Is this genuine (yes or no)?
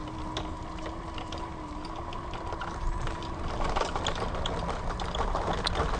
yes